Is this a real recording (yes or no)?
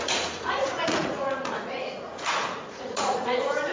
no